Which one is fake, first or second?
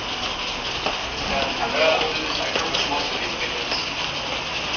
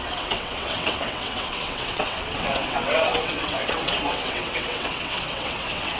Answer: second